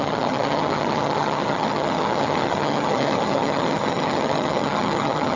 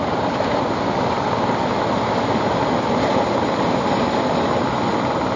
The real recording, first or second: second